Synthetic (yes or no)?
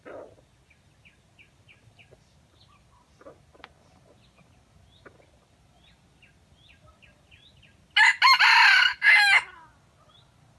no